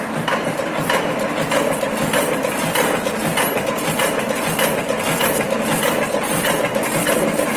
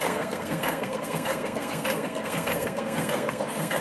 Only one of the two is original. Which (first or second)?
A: first